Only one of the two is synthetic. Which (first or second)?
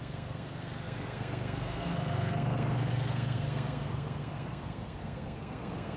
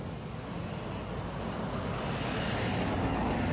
first